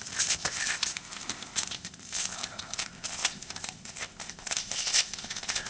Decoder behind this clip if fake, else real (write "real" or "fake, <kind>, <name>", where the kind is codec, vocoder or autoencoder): fake, codec, ZipCodec